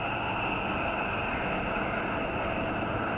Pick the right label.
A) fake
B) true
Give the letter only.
B